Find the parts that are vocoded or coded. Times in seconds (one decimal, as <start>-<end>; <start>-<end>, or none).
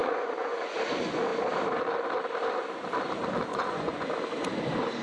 0.0-0.7; 3.5-4.1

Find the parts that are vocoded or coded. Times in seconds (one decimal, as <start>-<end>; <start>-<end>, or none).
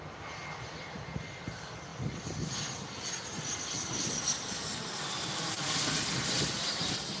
0.0-7.2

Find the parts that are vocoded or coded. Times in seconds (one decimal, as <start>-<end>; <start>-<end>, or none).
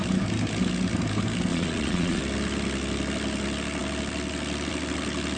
1.5-2.2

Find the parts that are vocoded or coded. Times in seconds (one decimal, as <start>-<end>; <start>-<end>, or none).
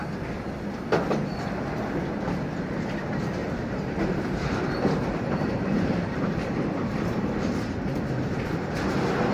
3.4-7.9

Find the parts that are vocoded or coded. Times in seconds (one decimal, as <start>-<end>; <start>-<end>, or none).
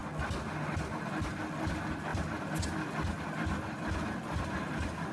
none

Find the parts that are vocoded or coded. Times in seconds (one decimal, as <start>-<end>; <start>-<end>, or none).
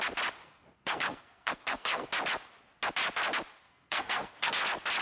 0.4-2.1; 3.6-4.6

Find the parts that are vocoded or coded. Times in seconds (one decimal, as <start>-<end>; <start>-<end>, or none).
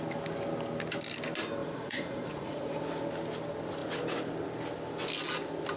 1.6-2.8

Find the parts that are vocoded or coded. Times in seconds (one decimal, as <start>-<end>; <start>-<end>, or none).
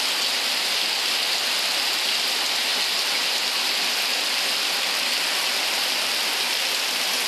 none